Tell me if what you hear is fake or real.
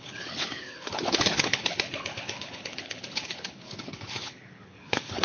fake